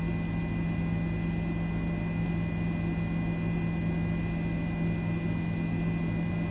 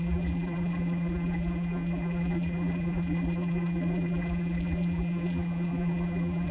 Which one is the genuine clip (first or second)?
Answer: first